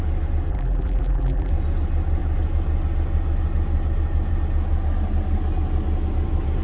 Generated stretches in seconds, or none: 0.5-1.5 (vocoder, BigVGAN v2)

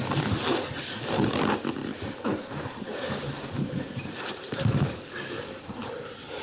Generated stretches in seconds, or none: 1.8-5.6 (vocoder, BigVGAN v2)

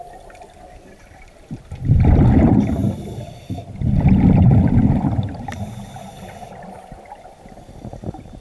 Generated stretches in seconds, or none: none

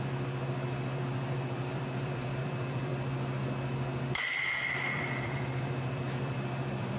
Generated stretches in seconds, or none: 0.0-2.9 (vocoder, BigVGAN v2); 4.7-7.0

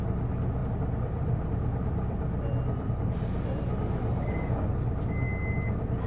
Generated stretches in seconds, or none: 0.6-2.9 (vocoder, BigVGAN v2)